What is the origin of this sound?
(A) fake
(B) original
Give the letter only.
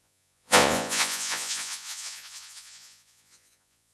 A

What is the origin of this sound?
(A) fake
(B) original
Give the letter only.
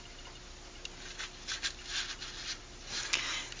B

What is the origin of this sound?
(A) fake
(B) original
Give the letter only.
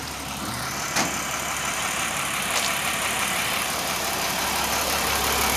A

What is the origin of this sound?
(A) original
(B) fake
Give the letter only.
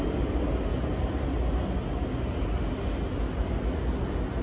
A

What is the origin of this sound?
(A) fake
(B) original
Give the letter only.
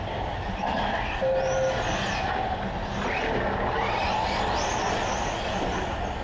B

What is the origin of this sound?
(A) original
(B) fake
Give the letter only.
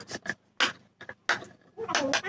A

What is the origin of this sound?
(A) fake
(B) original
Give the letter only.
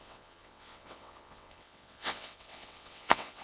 A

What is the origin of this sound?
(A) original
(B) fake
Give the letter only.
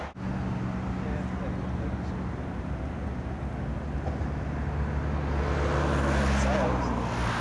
A